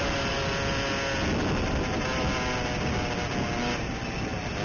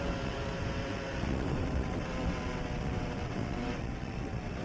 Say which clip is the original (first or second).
first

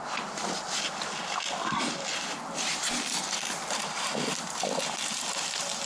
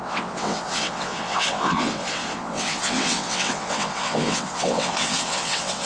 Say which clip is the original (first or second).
first